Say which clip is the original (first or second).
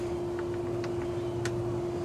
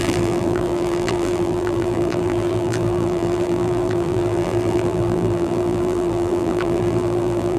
first